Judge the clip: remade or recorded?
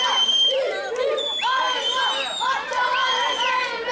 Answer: recorded